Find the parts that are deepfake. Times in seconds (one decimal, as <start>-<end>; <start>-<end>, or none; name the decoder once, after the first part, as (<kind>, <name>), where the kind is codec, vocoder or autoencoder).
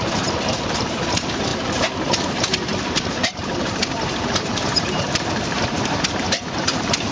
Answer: 0.0-1.5 (vocoder, BigVGAN v2); 2.2-7.1